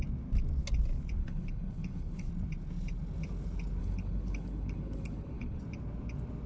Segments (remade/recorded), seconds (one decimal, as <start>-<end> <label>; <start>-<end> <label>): 0.0-1.2 recorded; 1.2-2.3 remade; 2.3-3.8 recorded; 3.8-5.6 remade; 5.6-6.5 recorded